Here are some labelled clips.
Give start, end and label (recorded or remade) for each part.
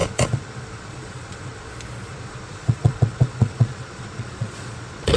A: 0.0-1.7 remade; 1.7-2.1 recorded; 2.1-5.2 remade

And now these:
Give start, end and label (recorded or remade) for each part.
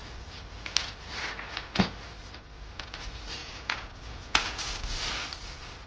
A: 0.0-3.4 recorded; 3.4-4.7 remade; 4.7-5.9 recorded